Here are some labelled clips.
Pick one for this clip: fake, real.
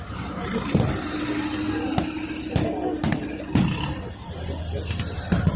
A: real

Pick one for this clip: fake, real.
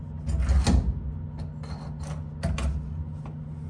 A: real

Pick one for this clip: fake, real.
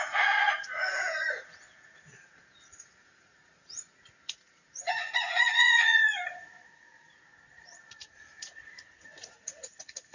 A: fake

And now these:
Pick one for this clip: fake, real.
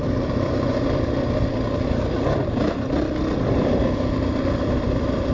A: fake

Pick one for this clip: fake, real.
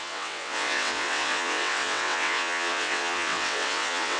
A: fake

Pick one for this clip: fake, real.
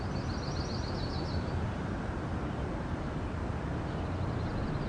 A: real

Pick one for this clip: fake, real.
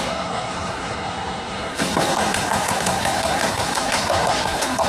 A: fake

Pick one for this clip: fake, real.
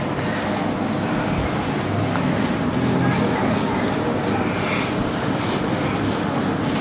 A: real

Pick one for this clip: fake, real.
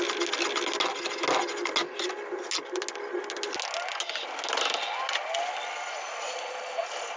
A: real